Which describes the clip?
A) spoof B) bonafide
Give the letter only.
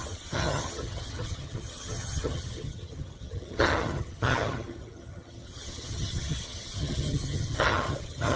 A